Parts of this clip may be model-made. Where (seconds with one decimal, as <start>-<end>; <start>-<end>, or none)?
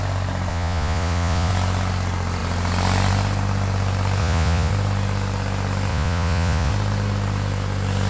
0.5-1.5; 4.2-4.7; 5.9-6.7